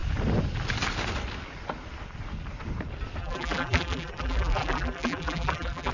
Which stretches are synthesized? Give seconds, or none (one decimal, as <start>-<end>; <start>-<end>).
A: 3.2-5.9